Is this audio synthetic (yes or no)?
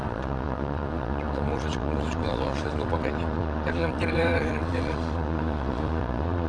yes